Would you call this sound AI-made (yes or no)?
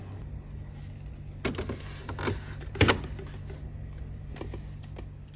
no